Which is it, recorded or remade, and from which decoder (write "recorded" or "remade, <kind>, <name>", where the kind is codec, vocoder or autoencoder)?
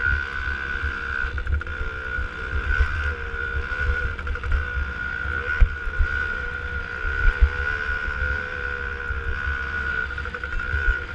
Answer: recorded